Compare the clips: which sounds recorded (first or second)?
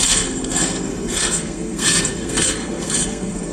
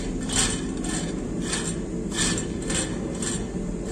second